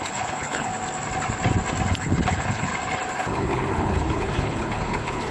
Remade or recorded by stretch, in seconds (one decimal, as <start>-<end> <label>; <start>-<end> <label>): 0.0-0.7 remade; 0.7-1.9 recorded; 1.9-2.7 remade; 2.7-3.2 recorded; 3.2-5.3 remade